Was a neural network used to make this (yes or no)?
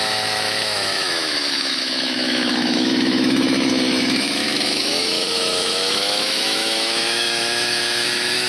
yes